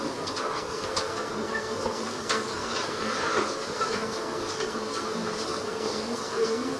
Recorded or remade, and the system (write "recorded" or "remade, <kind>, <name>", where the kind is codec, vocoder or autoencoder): remade, codec, SNAC